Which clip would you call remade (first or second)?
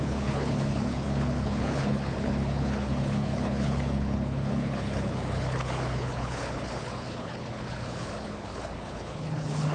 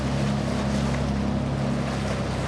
first